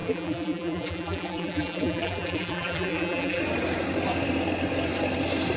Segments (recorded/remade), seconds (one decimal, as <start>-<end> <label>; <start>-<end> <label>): 0.0-3.4 remade; 3.4-5.6 recorded